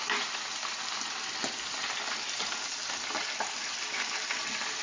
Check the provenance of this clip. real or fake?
real